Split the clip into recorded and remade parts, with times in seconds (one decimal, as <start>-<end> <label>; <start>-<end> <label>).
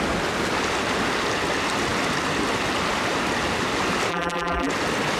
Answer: 0.0-4.1 recorded; 4.1-4.7 remade; 4.7-5.2 recorded